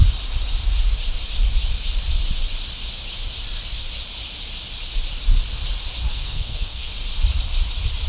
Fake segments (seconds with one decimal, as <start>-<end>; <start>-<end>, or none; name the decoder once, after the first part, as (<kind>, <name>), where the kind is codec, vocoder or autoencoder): 6.1-6.9 (codec, SNAC)